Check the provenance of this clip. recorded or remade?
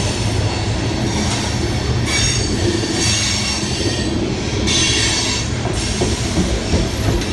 recorded